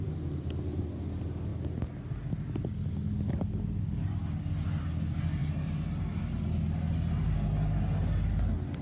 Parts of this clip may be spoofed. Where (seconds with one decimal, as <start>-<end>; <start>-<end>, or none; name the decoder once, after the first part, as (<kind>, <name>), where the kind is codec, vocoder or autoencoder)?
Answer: none

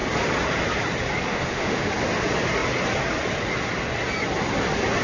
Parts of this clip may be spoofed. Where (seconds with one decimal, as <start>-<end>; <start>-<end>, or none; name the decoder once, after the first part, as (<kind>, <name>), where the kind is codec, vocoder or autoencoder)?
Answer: 1.3-1.9 (autoencoder, DAC-VAE)